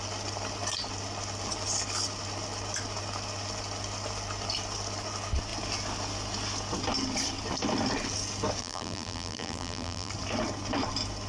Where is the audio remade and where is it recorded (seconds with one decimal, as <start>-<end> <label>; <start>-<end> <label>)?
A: 0.0-8.6 recorded; 8.6-10.1 remade; 10.1-11.3 recorded